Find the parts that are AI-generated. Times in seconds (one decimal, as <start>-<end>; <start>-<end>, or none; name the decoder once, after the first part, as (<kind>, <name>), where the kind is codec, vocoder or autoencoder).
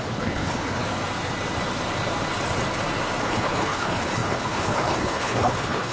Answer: 0.0-0.8 (codec, HILCodec); 3.2-5.9